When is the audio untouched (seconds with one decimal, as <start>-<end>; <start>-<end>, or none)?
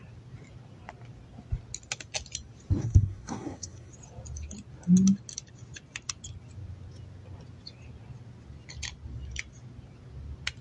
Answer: 0.0-2.8; 3.9-10.6